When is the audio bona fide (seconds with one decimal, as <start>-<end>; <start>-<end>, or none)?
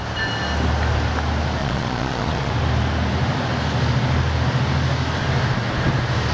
0.0-1.6; 2.5-6.3